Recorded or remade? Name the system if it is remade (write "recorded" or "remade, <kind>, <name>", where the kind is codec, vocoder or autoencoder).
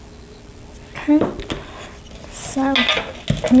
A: recorded